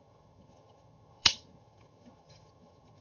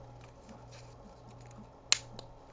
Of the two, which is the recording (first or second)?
second